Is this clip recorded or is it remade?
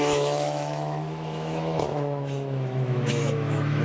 remade